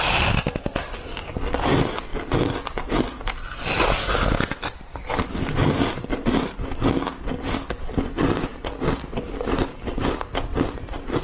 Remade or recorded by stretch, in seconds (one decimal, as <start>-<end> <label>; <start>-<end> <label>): 0.0-11.2 recorded

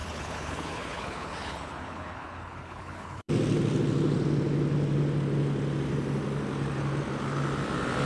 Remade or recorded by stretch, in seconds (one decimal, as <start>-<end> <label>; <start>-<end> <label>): 0.0-3.3 remade; 3.3-8.1 recorded

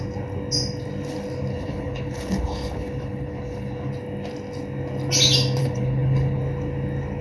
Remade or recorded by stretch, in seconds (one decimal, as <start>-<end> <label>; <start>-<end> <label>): 0.0-1.5 recorded; 1.5-3.9 remade; 3.9-5.6 recorded; 5.6-6.4 remade; 6.4-7.2 recorded

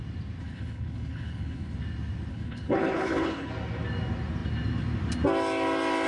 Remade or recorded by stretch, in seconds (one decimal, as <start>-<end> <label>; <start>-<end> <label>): 0.0-0.4 recorded; 0.4-1.8 remade; 1.8-2.3 recorded; 2.3-3.5 remade; 3.5-6.1 recorded